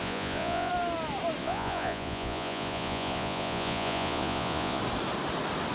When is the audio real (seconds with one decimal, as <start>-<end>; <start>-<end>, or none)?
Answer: 0.7-1.4; 4.8-5.7